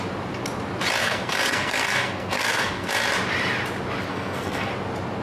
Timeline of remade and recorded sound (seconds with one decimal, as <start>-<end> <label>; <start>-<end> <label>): 0.0-1.0 recorded; 1.0-2.9 remade; 2.9-4.1 recorded; 4.1-4.7 remade; 4.7-5.2 recorded